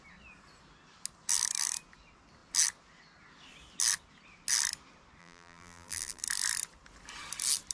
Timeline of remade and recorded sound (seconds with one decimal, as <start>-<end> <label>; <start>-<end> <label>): 0.0-5.2 recorded; 5.2-6.2 remade; 6.2-7.7 recorded